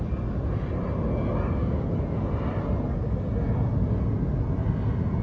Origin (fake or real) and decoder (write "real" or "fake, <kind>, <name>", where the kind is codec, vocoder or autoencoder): real